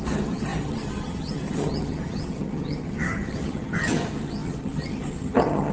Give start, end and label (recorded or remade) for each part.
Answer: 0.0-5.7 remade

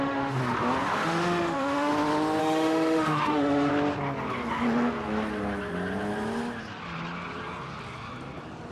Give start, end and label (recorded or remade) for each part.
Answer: 0.0-0.4 remade; 0.4-0.9 recorded; 0.9-1.9 remade; 1.9-2.4 recorded; 2.4-3.7 remade; 3.7-8.7 recorded